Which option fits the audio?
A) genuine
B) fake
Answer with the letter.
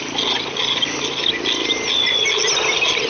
A